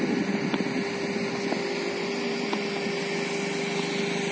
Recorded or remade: recorded